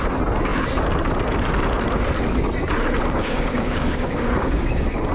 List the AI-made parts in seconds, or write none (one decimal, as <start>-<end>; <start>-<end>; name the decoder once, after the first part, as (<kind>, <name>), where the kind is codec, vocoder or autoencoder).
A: 3.2-5.1 (codec, DAC)